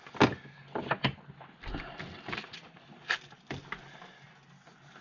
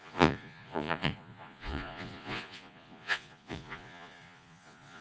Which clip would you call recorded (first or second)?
first